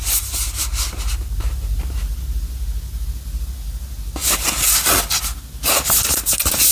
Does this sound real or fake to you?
real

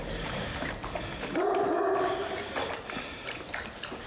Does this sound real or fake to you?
real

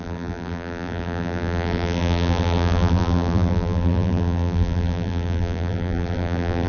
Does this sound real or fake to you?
fake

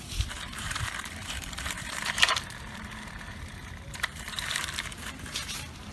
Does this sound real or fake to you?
fake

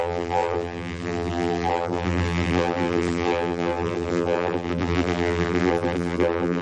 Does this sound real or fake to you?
fake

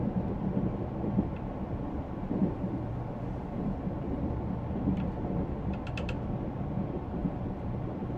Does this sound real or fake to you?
fake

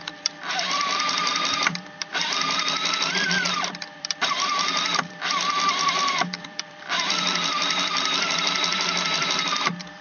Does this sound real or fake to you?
fake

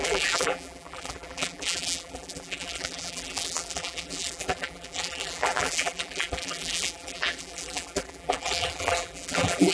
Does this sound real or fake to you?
fake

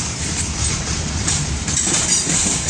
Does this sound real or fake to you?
fake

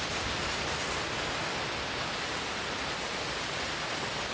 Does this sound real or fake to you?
real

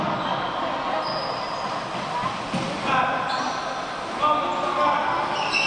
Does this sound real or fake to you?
real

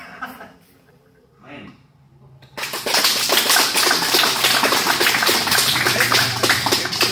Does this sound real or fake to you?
real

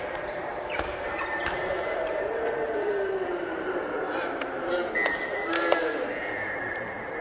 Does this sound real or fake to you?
fake